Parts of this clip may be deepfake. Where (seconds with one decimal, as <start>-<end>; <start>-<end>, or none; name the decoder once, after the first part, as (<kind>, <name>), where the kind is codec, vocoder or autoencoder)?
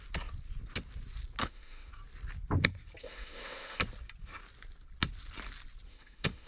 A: 1.4-1.9 (autoencoder, DAC-VAE); 3.0-3.8; 5.9-6.5